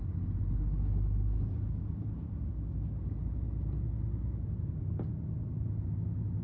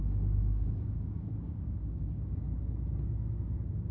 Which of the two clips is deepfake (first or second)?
second